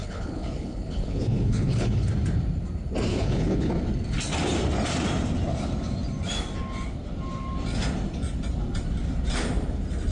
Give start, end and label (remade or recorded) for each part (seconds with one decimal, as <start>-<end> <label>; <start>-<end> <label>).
0.0-2.1 remade; 2.1-3.1 recorded; 3.1-3.7 remade; 3.7-10.1 recorded